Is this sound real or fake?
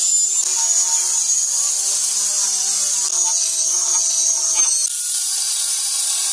real